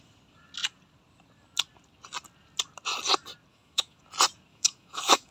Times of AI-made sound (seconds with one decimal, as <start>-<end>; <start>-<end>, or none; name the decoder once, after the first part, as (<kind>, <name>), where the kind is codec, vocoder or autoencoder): 3.5-4.0 (autoencoder, DAC-VAE); 4.5-5.3